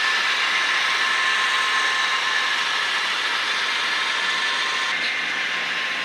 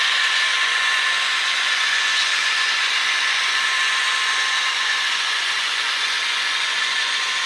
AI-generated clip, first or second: second